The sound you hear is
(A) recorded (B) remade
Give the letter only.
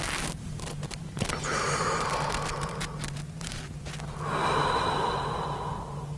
A